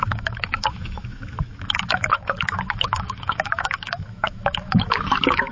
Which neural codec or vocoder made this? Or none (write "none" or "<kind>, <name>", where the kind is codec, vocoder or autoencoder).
autoencoder, DAC-VAE